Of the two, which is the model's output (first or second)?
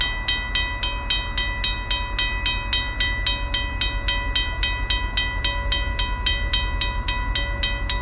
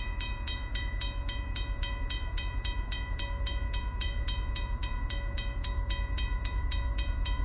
second